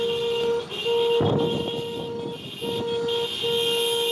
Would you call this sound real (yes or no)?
yes